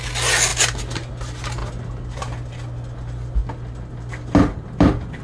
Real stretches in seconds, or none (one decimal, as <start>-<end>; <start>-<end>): 0.0-5.2